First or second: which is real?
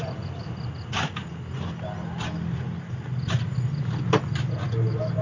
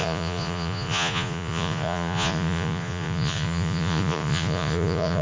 first